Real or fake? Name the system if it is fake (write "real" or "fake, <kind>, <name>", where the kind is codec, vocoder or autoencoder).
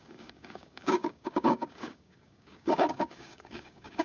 fake, codec, DAC